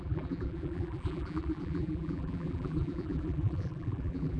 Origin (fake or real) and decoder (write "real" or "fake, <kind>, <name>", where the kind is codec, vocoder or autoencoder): fake, vocoder, BigVGAN v2